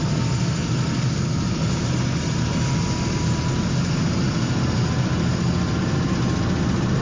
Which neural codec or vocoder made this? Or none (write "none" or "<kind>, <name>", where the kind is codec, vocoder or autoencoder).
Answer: none